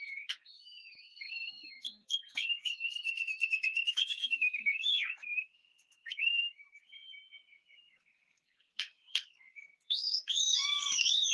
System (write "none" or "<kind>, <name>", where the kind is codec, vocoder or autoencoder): codec, SNAC